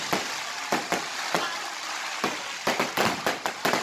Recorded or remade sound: recorded